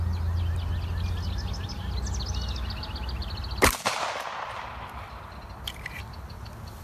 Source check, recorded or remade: recorded